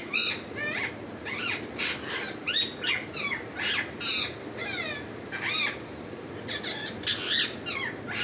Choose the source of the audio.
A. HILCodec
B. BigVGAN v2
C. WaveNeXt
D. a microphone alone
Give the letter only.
D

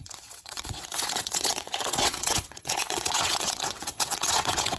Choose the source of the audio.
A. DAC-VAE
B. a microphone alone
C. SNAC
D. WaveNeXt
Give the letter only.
D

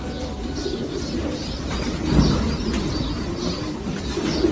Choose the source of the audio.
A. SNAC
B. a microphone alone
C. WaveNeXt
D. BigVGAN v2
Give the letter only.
B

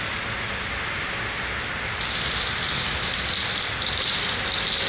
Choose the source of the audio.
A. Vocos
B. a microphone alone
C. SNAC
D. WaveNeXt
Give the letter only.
B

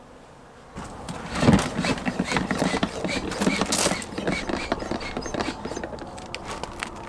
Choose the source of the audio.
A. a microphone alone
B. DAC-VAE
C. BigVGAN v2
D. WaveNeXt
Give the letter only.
A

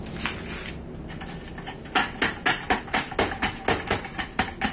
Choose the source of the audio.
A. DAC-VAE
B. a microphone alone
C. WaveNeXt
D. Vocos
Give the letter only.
B